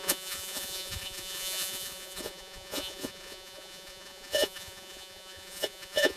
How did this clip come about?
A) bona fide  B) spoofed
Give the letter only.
B